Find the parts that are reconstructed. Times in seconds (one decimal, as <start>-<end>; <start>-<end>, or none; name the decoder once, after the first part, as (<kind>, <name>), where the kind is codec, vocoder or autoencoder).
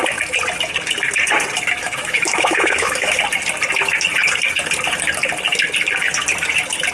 1.8-3.2 (autoencoder, DAC-VAE)